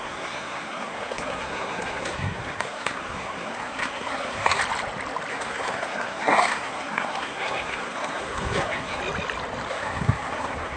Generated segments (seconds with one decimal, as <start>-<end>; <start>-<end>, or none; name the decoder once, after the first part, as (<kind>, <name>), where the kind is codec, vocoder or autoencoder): 0.0-4.6 (codec, SNAC); 5.3-9.0; 9.7-10.8